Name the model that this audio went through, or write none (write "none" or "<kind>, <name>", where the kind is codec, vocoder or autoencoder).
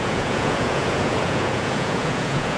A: vocoder, Vocos